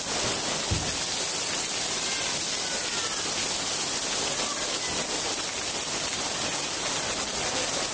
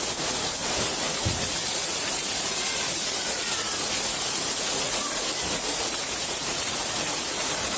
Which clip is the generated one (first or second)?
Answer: second